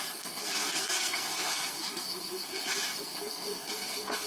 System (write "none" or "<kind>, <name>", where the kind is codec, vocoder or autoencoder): codec, SNAC